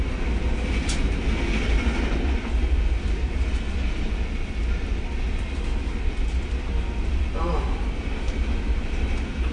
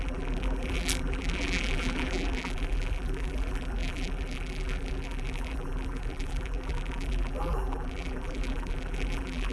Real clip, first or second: first